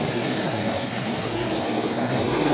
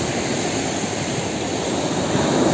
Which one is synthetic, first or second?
first